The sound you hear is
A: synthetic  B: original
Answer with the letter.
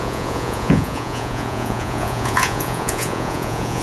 A